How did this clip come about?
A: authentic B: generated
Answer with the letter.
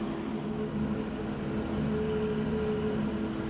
A